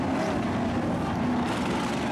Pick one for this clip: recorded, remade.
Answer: recorded